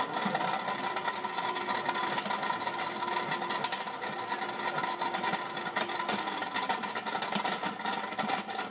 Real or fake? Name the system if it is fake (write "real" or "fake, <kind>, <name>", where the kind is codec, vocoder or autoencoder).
real